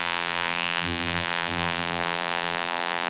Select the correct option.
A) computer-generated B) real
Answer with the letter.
A